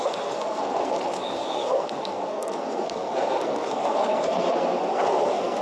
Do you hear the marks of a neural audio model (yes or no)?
yes